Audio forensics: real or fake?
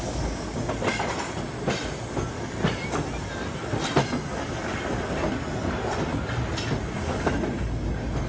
real